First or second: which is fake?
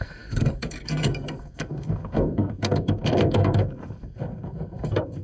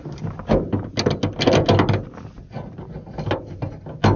first